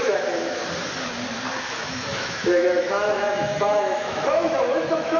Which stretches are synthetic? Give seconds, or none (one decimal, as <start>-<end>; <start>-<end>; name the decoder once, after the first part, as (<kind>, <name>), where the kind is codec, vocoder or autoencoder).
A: 0.0-0.6 (autoencoder, DAC-VAE); 1.6-5.2